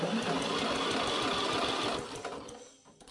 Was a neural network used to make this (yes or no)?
no